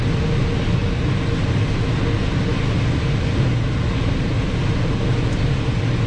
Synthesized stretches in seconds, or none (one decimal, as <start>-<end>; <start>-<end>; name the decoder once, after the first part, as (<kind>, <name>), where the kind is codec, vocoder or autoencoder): none